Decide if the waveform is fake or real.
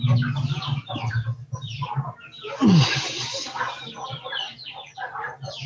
real